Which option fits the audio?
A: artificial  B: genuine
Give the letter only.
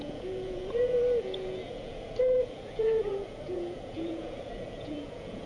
A